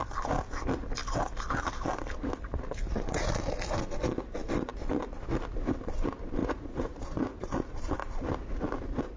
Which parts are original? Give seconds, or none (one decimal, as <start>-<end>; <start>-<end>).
0.0-6.4; 7.5-9.2